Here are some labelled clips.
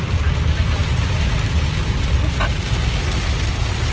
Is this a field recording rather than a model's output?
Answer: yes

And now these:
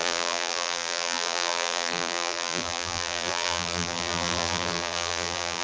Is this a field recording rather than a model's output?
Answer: no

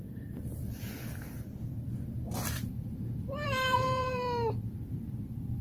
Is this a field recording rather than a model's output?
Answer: no